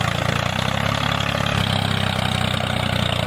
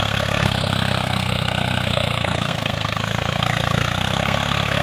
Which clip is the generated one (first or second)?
second